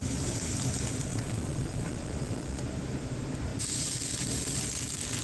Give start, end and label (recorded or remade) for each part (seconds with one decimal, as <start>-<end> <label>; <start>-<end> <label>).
0.0-1.1 recorded; 1.1-2.6 remade; 2.6-5.2 recorded